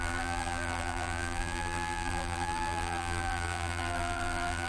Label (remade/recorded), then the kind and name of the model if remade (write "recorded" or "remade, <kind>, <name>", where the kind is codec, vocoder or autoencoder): remade, vocoder, BigVGAN v2